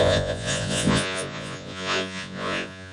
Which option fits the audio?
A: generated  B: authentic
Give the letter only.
A